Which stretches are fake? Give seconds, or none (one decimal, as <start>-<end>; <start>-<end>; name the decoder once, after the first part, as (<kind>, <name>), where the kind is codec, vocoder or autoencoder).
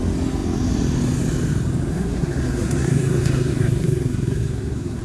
1.9-5.0 (codec, SNAC)